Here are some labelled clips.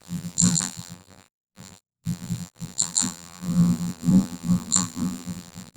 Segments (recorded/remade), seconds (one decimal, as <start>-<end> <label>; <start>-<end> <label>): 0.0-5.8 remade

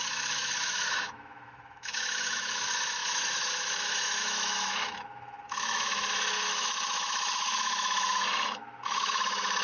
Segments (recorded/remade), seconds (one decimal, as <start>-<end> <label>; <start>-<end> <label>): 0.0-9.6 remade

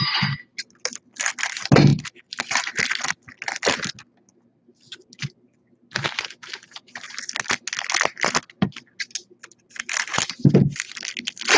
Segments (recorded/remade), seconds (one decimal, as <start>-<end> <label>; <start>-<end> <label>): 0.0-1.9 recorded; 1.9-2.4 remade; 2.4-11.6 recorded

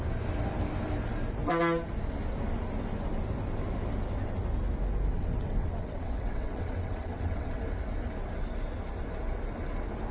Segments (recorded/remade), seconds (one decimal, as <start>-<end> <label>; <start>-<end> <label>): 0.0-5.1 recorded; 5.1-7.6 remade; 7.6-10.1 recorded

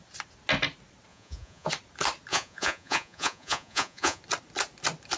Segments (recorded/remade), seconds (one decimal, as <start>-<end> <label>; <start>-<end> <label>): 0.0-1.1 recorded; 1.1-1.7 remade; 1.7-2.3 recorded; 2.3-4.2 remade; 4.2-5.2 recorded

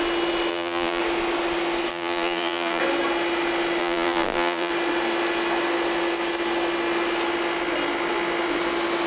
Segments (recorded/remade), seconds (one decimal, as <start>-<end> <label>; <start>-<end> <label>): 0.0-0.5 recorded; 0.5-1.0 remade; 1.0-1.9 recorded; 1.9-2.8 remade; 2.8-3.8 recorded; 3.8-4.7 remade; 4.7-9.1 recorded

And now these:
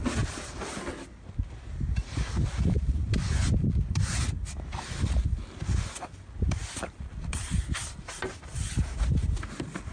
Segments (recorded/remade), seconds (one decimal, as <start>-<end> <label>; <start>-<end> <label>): 0.0-9.9 recorded